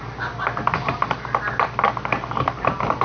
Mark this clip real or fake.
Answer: real